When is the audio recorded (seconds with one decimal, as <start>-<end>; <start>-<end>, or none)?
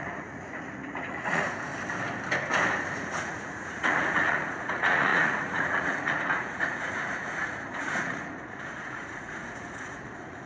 1.7-2.8